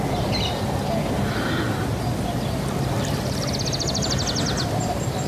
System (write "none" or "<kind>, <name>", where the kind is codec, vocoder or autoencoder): none